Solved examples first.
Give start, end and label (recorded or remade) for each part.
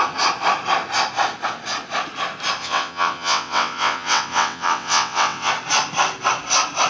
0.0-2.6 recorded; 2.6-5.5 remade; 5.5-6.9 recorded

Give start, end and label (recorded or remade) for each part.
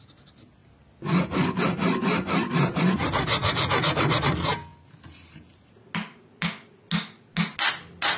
0.0-8.2 recorded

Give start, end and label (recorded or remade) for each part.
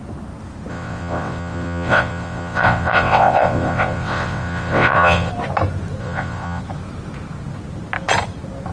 0.0-0.7 recorded; 0.7-5.3 remade; 5.3-6.0 recorded; 6.0-6.6 remade; 6.6-8.7 recorded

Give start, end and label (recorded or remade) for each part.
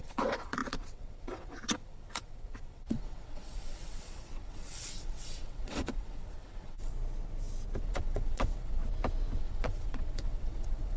0.0-6.9 remade; 6.9-7.8 recorded; 7.8-8.8 remade; 8.8-9.4 recorded; 9.4-11.0 remade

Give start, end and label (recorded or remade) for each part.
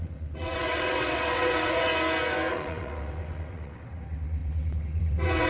0.0-1.9 remade; 1.9-2.5 recorded; 2.5-5.5 remade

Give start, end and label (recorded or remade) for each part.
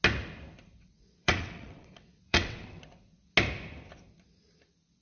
0.0-0.8 recorded; 0.8-2.8 remade; 2.8-5.0 recorded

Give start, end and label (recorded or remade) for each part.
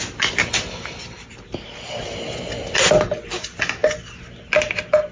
0.0-5.1 recorded